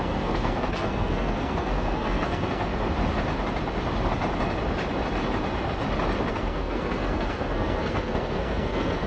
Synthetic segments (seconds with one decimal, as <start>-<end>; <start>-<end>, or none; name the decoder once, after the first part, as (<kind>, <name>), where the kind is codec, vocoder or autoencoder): 0.0-2.7 (codec, SNAC); 6.3-9.1